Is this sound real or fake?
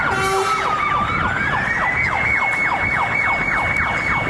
real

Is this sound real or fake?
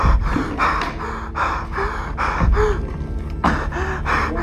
real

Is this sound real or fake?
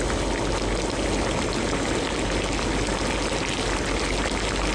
real